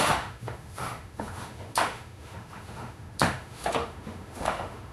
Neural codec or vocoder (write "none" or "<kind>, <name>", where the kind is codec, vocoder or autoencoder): autoencoder, DAC-VAE